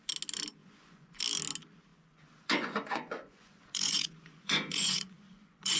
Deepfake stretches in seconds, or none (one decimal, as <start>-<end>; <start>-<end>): 0.6-1.2; 1.9-5.8